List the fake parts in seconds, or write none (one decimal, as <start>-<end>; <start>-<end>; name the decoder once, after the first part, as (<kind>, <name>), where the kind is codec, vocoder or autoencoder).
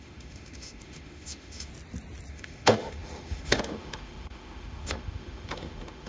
0.0-1.7 (autoencoder, DAC-VAE); 2.3-6.1